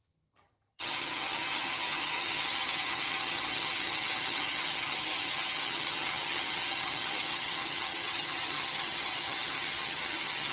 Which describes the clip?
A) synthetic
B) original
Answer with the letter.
A